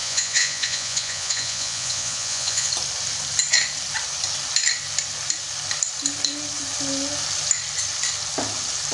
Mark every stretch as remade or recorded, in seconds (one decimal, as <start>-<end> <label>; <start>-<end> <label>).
0.0-2.7 remade; 2.7-8.9 recorded